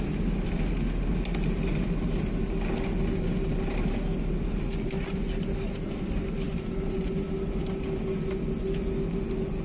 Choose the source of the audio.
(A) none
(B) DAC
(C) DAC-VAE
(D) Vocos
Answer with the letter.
A